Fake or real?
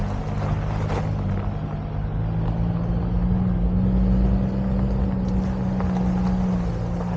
real